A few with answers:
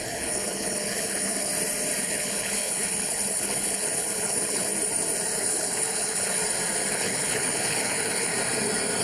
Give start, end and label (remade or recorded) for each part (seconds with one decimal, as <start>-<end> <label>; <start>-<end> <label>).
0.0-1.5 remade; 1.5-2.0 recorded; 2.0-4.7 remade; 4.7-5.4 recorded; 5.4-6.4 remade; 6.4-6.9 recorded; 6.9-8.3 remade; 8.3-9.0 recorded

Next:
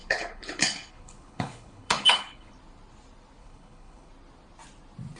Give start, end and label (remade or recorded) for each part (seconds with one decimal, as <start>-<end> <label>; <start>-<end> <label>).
0.0-2.5 remade; 2.5-3.4 recorded; 3.4-4.1 remade; 4.1-5.2 recorded

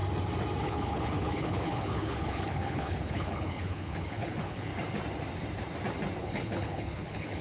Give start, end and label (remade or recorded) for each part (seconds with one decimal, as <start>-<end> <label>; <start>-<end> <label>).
0.0-0.6 recorded; 0.6-4.7 remade; 4.7-6.2 recorded; 6.2-7.4 remade

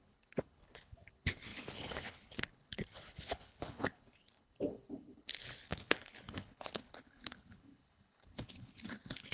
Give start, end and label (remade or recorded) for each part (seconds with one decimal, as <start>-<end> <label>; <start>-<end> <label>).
0.0-9.3 remade

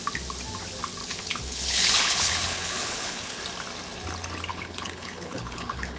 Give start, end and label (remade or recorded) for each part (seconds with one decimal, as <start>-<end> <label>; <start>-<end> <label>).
0.0-1.0 recorded; 1.0-3.4 remade; 3.4-4.5 recorded; 4.5-6.0 remade

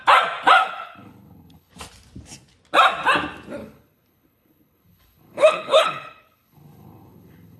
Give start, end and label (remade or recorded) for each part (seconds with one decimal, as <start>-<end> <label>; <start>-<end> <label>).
0.0-0.6 recorded; 0.6-1.7 remade; 1.7-3.6 recorded; 3.6-7.6 remade

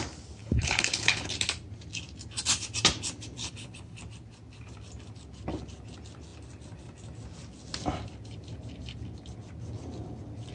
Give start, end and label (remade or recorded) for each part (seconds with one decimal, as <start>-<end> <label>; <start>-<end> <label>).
0.0-0.4 recorded; 0.4-1.3 remade; 1.3-3.4 recorded; 3.4-4.0 remade; 4.0-10.5 recorded

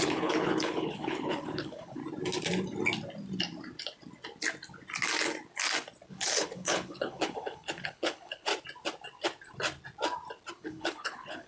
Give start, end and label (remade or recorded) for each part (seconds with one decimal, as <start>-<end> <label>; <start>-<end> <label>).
0.0-2.0 remade; 2.0-6.1 recorded; 6.1-8.5 remade; 8.5-10.5 recorded; 10.5-11.5 remade